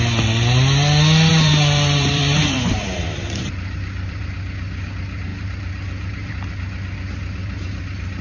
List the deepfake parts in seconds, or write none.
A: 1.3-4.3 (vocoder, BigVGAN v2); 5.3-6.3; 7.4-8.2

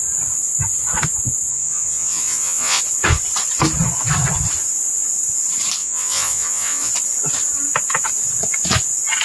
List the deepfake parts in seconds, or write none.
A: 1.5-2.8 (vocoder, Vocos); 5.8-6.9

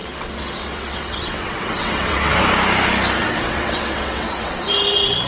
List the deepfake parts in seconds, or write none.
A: 0.0-2.4 (vocoder, WaveNeXt); 3.2-4.5

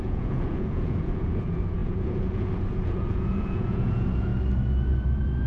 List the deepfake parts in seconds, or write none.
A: 0.0-4.3 (vocoder, Vocos)

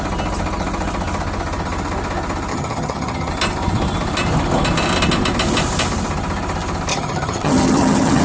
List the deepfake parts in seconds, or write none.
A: 2.5-3.3 (vocoder, HiFi-GAN); 6.9-8.2